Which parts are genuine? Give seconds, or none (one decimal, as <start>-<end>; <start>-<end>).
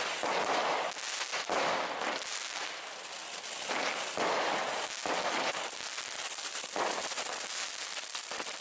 0.0-6.2; 8.2-8.6